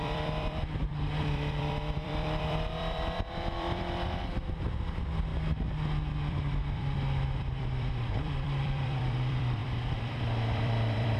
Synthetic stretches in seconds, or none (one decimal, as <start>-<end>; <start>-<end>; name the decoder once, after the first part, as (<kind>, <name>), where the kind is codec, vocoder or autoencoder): 0.0-5.3 (vocoder, BigVGAN v2); 6.3-11.2

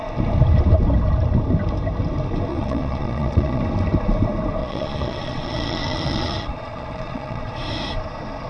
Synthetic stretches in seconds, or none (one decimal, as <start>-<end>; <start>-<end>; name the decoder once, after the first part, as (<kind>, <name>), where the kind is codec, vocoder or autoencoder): 2.5-3.6 (vocoder, Vocos); 4.6-7.5

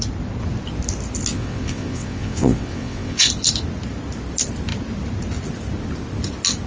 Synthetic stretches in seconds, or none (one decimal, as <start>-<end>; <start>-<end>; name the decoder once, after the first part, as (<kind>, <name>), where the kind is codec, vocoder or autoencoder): 1.3-3.3 (vocoder, WaveNeXt)

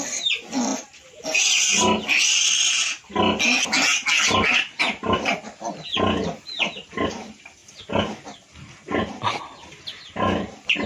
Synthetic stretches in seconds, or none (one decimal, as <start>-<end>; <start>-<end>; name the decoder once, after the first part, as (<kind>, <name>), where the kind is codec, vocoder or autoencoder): none

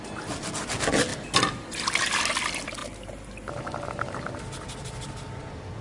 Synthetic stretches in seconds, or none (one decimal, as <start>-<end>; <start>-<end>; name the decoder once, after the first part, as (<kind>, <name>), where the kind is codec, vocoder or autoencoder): none